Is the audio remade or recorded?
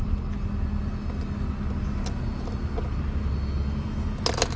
recorded